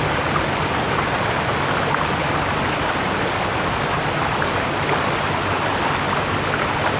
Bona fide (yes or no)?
yes